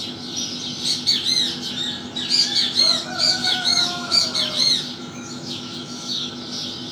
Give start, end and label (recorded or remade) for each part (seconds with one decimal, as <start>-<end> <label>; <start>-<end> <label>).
0.0-3.4 recorded; 3.4-4.2 remade; 4.2-5.0 recorded; 5.0-6.3 remade; 6.3-6.9 recorded